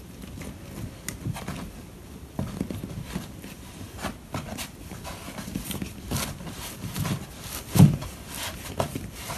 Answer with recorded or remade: recorded